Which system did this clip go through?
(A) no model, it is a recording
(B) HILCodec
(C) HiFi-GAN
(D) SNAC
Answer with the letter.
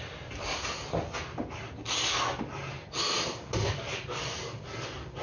A